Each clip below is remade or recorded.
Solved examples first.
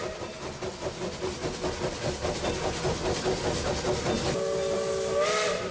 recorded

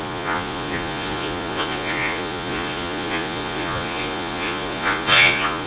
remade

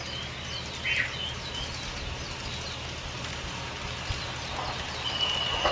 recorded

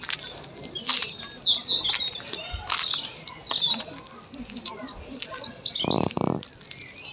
recorded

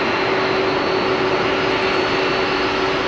recorded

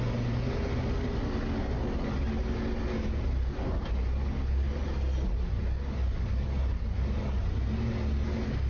recorded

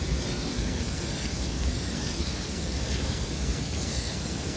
remade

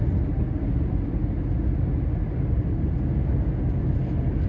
recorded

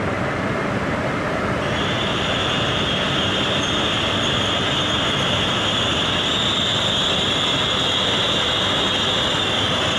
recorded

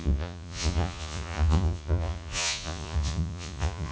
remade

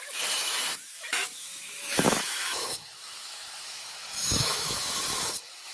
remade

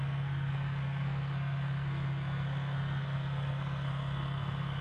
remade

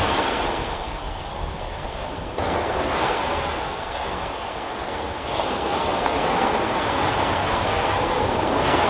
remade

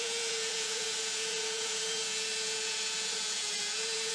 remade